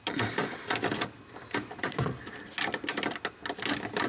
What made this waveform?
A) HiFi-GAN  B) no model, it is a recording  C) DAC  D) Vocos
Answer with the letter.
B